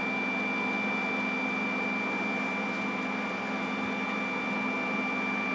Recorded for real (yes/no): yes